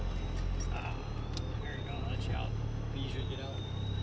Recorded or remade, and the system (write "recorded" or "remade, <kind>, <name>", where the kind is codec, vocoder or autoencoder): recorded